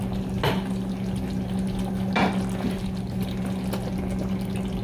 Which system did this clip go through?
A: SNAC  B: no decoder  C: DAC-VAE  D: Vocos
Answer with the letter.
B